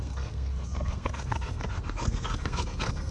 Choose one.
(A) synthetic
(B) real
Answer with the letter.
A